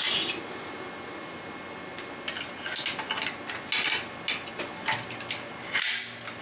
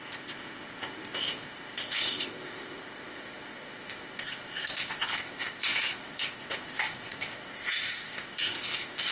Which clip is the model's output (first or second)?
second